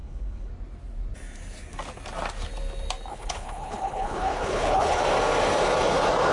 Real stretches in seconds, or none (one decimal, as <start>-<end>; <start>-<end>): 0.5-3.1; 5.0-6.3